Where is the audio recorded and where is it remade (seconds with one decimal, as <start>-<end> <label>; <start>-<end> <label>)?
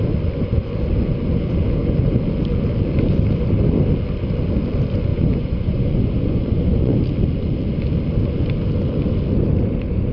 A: 0.0-5.1 recorded; 5.1-7.0 remade; 7.0-10.1 recorded